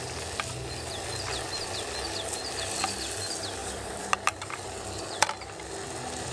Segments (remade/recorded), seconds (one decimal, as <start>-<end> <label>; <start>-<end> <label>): 0.0-3.6 recorded; 3.6-5.0 remade; 5.0-6.3 recorded